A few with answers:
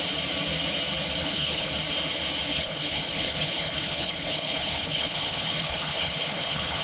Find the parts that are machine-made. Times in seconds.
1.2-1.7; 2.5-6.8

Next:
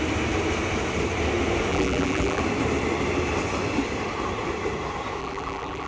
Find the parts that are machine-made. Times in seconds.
1.7-2.4; 5.2-5.9

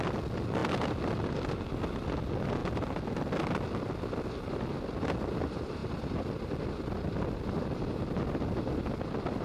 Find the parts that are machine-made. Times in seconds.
none